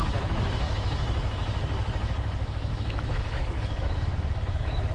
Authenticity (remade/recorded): remade